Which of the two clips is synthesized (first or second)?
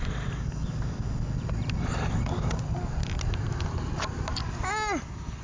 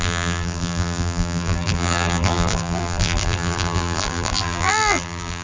second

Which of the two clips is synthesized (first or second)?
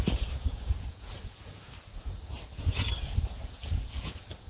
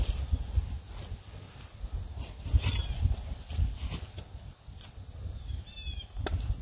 first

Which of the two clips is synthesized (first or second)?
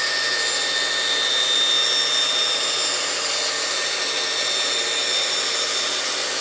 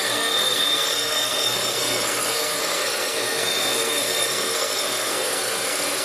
second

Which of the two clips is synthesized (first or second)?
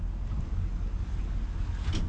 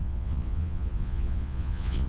second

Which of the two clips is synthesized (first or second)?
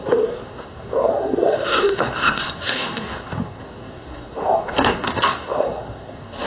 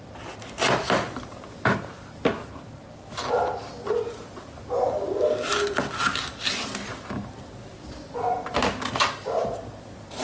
first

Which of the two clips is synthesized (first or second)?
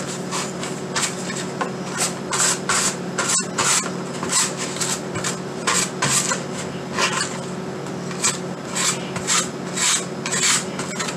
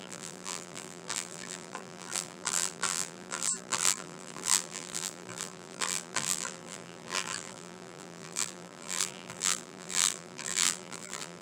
second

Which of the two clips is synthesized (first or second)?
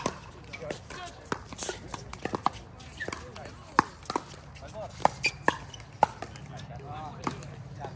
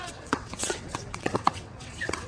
second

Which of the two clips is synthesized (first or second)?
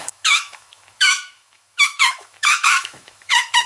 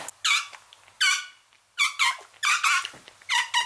first